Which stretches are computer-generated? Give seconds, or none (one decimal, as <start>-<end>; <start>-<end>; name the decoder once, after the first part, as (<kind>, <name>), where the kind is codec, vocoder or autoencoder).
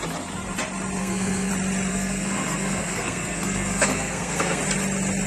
1.0-1.5 (codec, SNAC); 1.9-4.6